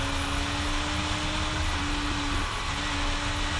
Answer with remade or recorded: recorded